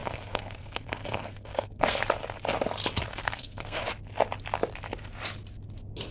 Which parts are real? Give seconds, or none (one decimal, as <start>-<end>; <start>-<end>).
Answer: 2.0-3.1; 3.8-6.1